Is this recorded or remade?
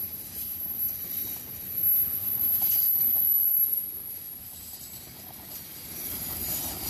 recorded